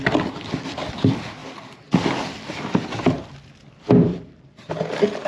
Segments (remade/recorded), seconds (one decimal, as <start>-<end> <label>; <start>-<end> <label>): 0.0-4.1 recorded; 4.1-4.7 remade; 4.7-5.3 recorded